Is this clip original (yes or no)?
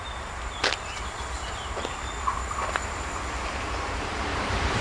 no